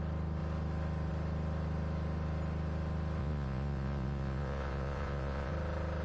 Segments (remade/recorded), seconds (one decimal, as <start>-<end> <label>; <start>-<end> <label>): 0.0-3.2 recorded; 3.2-5.5 remade; 5.5-6.0 recorded